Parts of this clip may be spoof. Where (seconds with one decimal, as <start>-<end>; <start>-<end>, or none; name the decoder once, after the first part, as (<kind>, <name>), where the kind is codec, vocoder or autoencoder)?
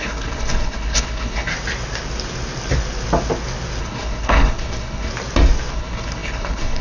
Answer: 0.0-1.5 (codec, HILCodec); 3.8-5.1; 5.7-6.8